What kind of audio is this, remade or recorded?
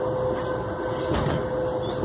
recorded